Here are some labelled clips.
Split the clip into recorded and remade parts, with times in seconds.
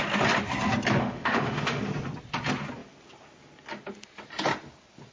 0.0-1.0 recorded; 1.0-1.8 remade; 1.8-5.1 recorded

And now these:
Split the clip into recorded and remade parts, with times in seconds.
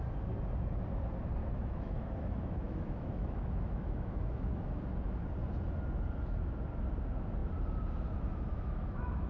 0.0-1.4 recorded; 1.4-4.8 remade; 4.8-8.5 recorded; 8.5-9.3 remade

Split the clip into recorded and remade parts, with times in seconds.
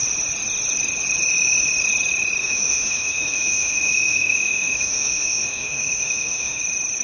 0.0-2.4 recorded; 2.4-6.6 remade; 6.6-7.0 recorded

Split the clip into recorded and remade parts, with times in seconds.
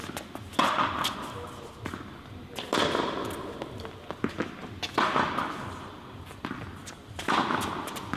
0.0-8.2 recorded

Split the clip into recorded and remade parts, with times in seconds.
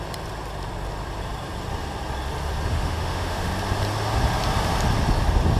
0.0-2.7 recorded; 2.7-3.5 remade; 3.5-5.6 recorded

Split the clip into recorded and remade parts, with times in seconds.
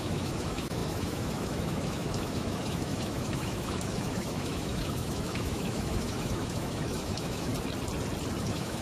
0.0-7.5 remade; 7.5-8.4 recorded; 8.4-8.8 remade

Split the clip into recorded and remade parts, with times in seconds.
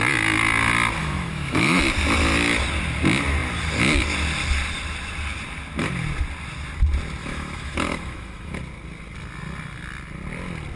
0.0-1.0 recorded; 1.0-1.8 remade; 1.8-7.2 recorded; 7.2-8.6 remade; 8.6-10.8 recorded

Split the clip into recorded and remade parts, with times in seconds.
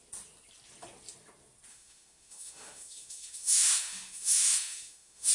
0.0-1.7 recorded; 1.7-5.3 remade